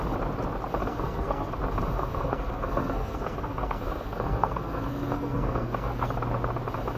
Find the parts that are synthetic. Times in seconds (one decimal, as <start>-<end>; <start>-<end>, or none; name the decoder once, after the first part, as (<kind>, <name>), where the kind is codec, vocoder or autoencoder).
0.8-1.5 (codec, SNAC); 1.9-6.1